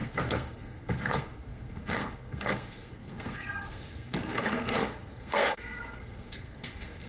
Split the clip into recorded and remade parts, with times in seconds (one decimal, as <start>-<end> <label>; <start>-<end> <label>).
0.0-7.1 remade